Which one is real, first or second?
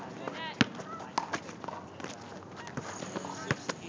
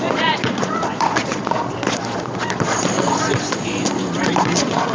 first